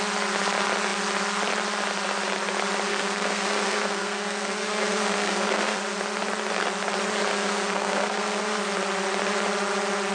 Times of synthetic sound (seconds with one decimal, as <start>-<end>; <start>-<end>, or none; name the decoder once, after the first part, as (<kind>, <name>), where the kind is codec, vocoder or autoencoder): 2.9-5.8 (codec, SNAC); 7.3-8.6